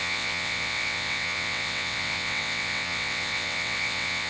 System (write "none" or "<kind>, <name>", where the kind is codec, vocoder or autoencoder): vocoder, WaveNeXt